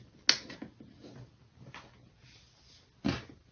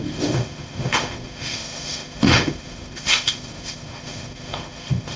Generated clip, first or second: second